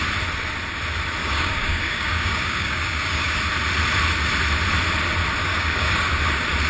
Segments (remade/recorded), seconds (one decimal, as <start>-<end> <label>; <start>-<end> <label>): 0.0-1.2 recorded; 1.2-3.4 remade; 3.4-5.4 recorded; 5.4-6.1 remade; 6.1-6.7 recorded